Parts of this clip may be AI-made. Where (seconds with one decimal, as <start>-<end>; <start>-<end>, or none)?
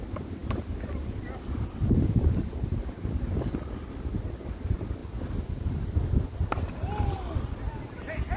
none